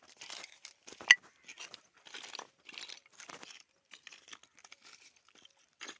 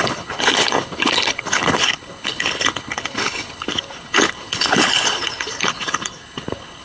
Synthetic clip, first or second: second